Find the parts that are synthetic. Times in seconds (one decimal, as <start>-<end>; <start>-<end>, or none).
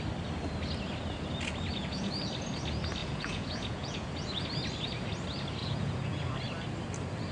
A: 1.7-2.2; 3.0-4.3; 5.6-6.3